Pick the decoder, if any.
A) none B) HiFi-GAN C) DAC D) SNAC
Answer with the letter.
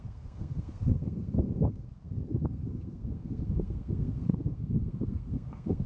D